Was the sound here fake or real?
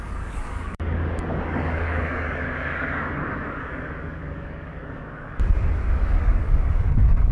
fake